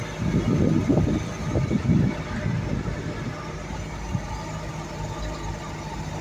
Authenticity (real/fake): real